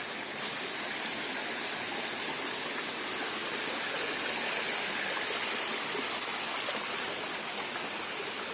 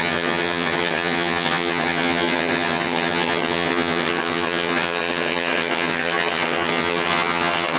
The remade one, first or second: second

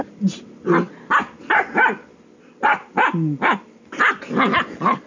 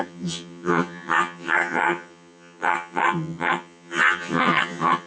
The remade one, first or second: second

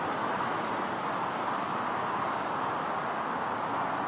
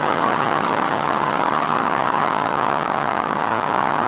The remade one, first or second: second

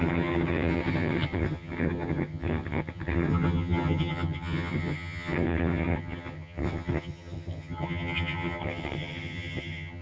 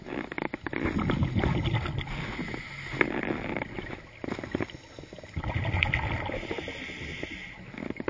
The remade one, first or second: first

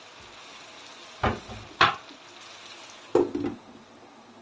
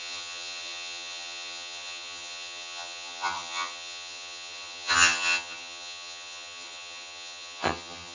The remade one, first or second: second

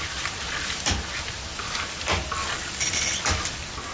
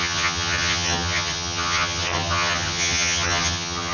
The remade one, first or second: second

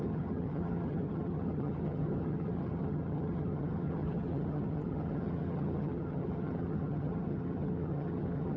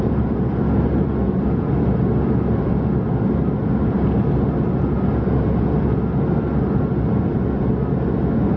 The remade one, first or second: first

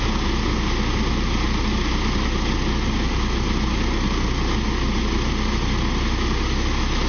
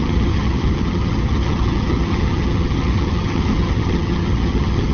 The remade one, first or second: second